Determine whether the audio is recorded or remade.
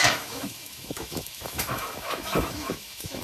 remade